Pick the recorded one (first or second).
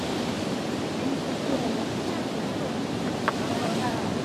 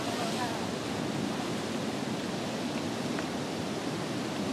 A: second